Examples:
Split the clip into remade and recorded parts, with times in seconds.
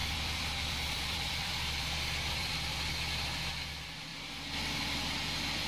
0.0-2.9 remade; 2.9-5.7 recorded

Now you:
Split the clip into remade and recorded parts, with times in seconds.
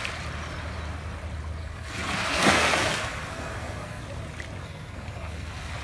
0.0-1.6 recorded; 1.6-4.0 remade; 4.0-4.6 recorded; 4.6-5.8 remade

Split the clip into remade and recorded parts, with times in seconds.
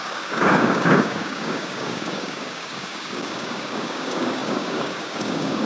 0.0-5.7 remade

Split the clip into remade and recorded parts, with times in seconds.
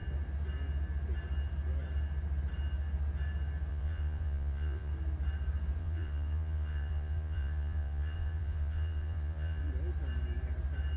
0.0-3.7 recorded; 3.7-4.9 remade; 4.9-5.8 recorded; 5.8-9.7 remade; 9.7-11.0 recorded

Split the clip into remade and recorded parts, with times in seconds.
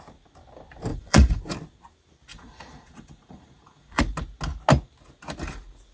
0.0-0.9 recorded; 0.9-1.4 remade; 1.4-2.3 recorded; 2.3-4.0 remade; 4.0-5.9 recorded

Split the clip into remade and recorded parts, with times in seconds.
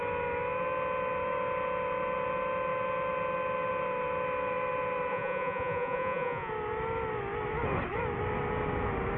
0.0-5.1 recorded; 5.1-6.5 remade; 6.5-9.2 recorded